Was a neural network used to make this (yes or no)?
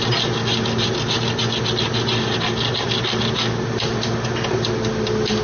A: no